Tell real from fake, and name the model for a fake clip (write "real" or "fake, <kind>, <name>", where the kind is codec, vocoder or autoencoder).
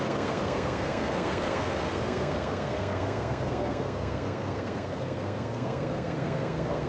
fake, codec, SNAC